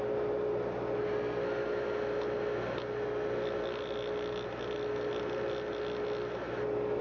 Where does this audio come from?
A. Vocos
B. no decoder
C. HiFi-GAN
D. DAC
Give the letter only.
B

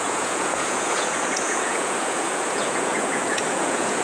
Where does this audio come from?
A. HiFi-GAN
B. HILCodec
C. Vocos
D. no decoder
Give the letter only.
C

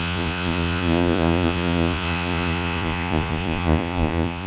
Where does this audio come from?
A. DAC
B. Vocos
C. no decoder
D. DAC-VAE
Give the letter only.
B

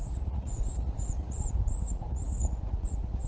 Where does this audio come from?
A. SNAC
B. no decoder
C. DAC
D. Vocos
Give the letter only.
D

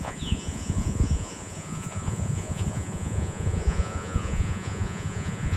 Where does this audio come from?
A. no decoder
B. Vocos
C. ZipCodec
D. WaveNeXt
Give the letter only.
B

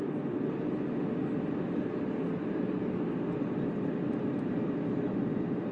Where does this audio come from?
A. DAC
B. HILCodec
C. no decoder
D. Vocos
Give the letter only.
C